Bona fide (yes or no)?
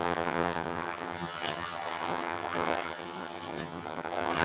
no